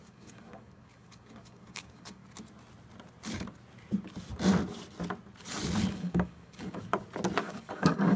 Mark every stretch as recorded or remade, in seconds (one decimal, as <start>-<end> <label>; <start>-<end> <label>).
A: 0.0-2.2 remade; 2.2-5.9 recorded; 5.9-6.9 remade; 6.9-7.4 recorded; 7.4-8.2 remade